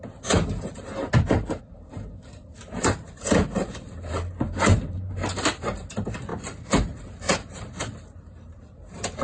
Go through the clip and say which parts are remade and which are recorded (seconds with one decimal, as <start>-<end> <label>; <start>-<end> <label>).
0.0-6.3 remade; 6.3-7.0 recorded; 7.0-9.2 remade